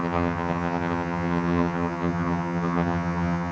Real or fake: fake